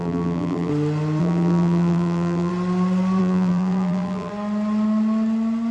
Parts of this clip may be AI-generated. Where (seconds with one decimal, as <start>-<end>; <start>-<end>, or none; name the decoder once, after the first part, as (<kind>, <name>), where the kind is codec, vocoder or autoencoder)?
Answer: 0.0-0.7 (vocoder, BigVGAN v2); 1.2-2.5; 3.2-4.3